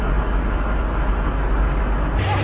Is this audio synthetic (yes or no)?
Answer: no